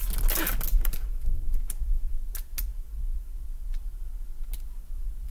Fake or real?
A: real